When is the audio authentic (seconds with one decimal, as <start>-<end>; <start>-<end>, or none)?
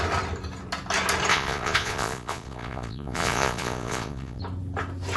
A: 0.0-1.3; 4.4-5.2